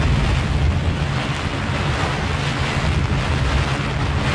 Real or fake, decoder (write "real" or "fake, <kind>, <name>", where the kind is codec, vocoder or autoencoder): real